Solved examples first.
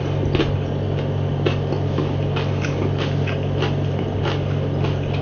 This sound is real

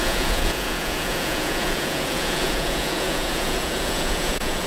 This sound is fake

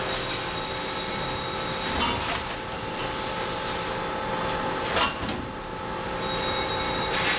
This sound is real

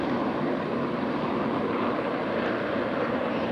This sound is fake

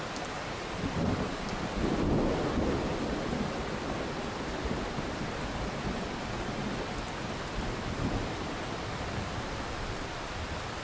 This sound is real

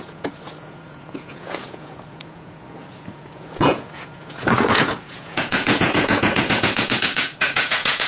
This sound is fake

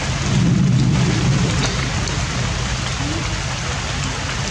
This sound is real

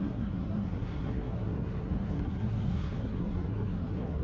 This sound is fake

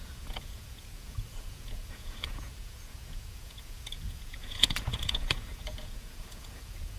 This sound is fake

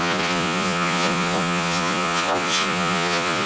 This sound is fake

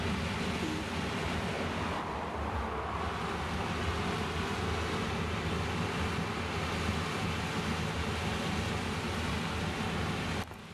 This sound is real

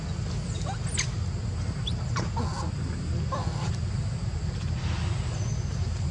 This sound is real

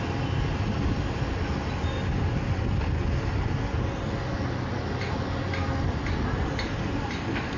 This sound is real